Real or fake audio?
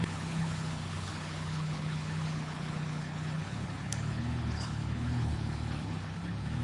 fake